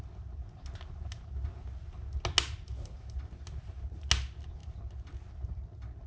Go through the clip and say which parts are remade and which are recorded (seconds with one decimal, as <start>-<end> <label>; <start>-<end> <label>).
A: 0.0-6.1 recorded